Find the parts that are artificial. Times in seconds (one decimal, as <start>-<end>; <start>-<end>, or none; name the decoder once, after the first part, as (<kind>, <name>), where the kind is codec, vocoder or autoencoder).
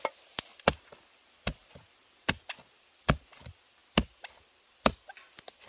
none